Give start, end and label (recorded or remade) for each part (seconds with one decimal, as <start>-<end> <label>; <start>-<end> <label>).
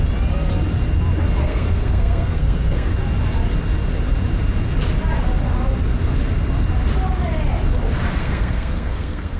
0.0-1.4 recorded; 1.4-2.9 remade; 2.9-8.2 recorded; 8.2-9.4 remade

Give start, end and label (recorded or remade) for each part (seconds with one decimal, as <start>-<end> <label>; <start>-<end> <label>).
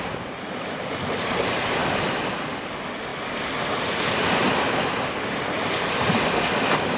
0.0-7.0 recorded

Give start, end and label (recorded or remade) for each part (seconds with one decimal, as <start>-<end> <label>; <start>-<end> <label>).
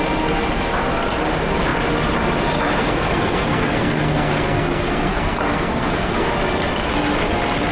0.0-2.8 recorded; 2.8-6.3 remade; 6.3-7.7 recorded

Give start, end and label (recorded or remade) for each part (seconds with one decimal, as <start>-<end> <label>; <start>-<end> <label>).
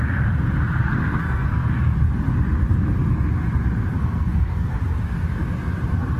0.0-0.8 recorded; 0.8-1.7 remade; 1.7-3.9 recorded; 3.9-4.8 remade; 4.8-6.2 recorded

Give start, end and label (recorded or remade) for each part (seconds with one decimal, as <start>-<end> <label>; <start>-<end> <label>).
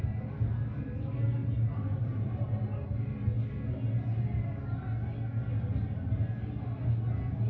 0.0-7.5 recorded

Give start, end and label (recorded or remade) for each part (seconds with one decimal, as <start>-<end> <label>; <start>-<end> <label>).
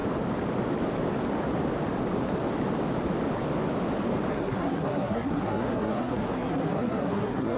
0.0-4.3 recorded; 4.3-7.6 remade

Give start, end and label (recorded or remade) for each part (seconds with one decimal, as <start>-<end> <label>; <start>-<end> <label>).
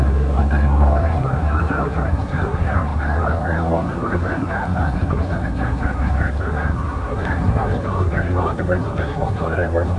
0.0-10.0 remade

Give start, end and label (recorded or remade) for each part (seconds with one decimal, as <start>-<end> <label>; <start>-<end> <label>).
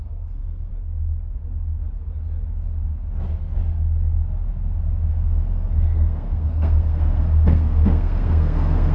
0.0-0.7 remade; 0.7-5.1 recorded; 5.1-8.9 remade